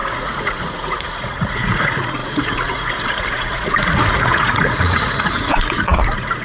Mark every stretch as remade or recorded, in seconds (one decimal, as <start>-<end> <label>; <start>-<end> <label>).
0.0-6.4 remade